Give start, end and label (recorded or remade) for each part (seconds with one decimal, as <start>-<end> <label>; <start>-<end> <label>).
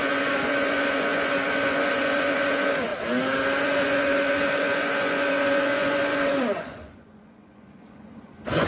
0.0-2.9 remade; 2.9-3.6 recorded; 3.6-8.7 remade